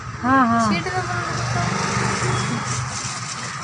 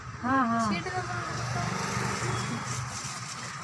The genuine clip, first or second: first